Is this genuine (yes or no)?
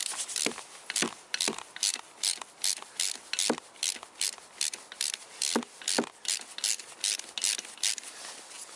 yes